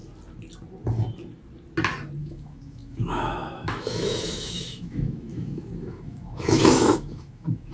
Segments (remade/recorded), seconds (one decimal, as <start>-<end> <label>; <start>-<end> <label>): 0.0-2.2 recorded; 2.2-7.7 remade